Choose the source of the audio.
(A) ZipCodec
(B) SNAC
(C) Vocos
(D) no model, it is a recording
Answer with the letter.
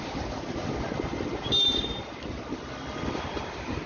D